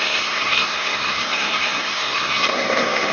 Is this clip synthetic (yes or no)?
yes